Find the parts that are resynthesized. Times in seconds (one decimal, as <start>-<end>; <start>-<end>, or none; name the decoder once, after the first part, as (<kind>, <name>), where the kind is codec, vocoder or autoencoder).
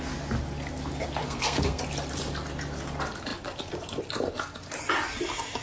1.2-1.8 (codec, SNAC)